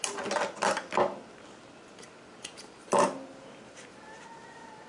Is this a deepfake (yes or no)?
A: no